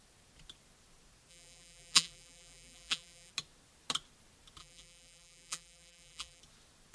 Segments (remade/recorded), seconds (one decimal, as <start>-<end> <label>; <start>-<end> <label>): 0.0-1.3 recorded; 1.3-3.3 remade; 3.3-4.6 recorded; 4.6-6.4 remade; 6.4-6.9 recorded